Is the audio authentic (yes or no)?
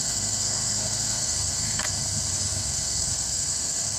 no